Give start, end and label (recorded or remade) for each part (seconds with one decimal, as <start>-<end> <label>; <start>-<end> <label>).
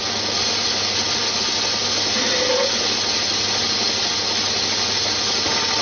0.0-5.8 recorded